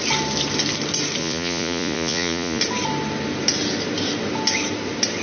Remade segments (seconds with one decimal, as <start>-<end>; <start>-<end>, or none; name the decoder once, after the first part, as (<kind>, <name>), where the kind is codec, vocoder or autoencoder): 1.2-2.6 (vocoder, Vocos)